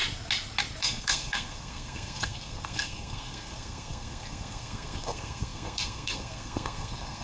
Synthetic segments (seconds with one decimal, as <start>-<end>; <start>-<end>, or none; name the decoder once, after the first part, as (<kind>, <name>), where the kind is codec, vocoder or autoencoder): 0.8-7.2 (codec, SNAC)